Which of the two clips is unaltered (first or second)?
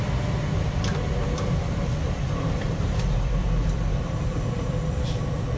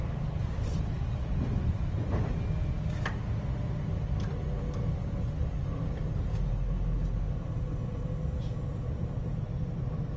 second